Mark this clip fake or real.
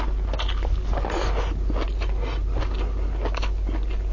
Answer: real